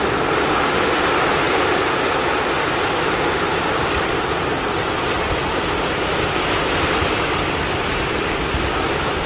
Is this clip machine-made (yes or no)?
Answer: yes